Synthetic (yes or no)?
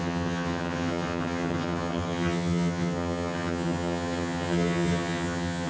yes